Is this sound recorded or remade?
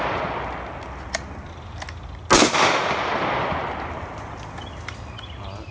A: recorded